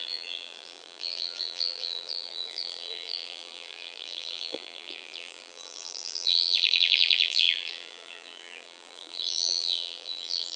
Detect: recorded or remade remade